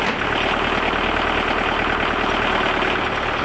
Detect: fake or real real